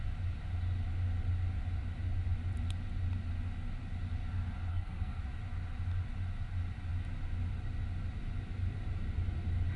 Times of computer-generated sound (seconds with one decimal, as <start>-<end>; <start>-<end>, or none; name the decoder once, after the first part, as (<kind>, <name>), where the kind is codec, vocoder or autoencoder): 4.7-5.2 (codec, SNAC)